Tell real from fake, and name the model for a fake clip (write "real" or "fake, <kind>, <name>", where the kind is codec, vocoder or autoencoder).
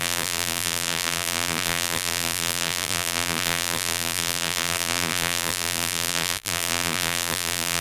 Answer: fake, vocoder, BigVGAN v2